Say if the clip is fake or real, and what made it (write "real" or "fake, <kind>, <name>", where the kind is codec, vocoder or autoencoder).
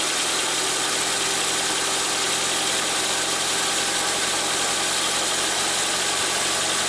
real